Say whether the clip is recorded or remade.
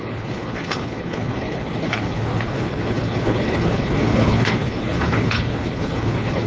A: remade